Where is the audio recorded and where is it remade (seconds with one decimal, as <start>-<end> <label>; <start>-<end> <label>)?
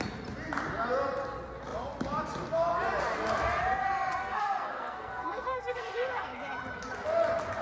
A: 0.0-4.2 recorded; 4.2-6.4 remade; 6.4-7.6 recorded